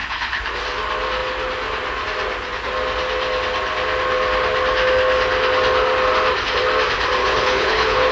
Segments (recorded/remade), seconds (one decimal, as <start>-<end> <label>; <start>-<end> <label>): 0.0-0.5 remade; 0.5-7.2 recorded; 7.2-8.1 remade